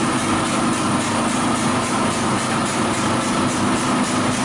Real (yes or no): yes